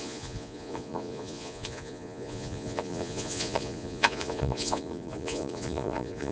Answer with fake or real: fake